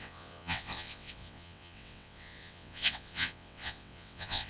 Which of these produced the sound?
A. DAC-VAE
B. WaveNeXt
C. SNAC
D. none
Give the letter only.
B